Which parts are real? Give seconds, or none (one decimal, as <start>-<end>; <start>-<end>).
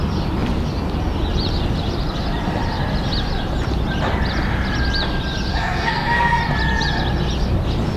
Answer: 0.0-5.5; 6.4-8.0